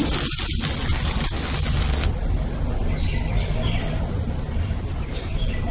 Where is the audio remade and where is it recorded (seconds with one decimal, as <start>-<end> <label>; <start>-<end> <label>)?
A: 0.0-5.7 recorded